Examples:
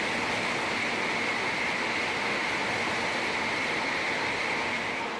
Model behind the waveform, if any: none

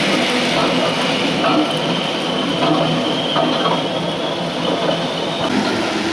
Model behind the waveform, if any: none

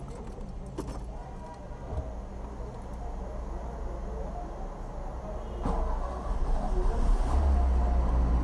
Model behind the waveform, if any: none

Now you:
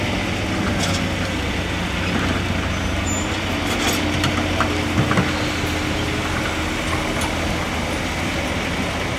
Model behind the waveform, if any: none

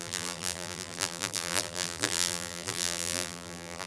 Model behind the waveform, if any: vocoder, BigVGAN v2